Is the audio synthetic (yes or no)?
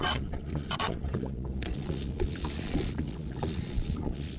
yes